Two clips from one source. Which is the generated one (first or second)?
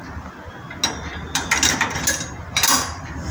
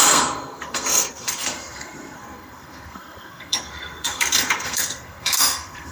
second